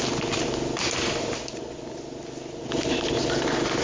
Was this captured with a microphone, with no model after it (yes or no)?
yes